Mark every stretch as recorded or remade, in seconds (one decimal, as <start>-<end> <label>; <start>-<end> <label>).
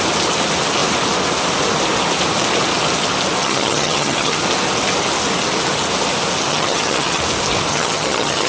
0.0-3.4 recorded; 3.4-4.4 remade; 4.4-6.5 recorded; 6.5-7.2 remade; 7.2-7.7 recorded; 7.7-8.5 remade